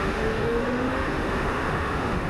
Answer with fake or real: fake